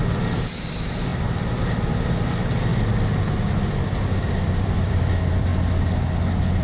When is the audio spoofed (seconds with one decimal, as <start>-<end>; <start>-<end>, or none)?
0.0-2.7; 3.7-5.5